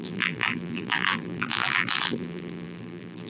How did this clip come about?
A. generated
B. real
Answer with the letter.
A